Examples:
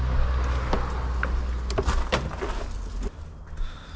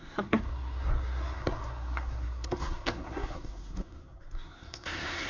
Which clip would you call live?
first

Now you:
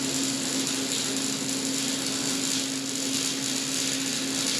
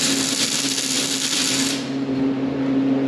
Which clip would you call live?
first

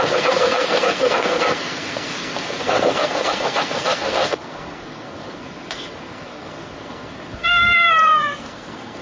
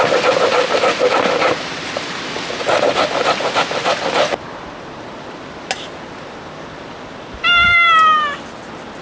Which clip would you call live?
second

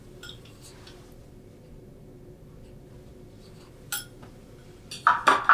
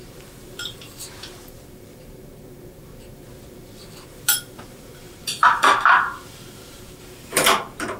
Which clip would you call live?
first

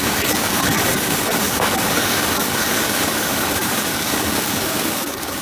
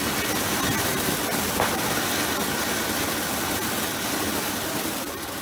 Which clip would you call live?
second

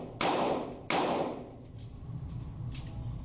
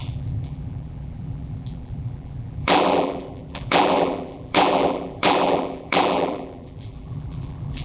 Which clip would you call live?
first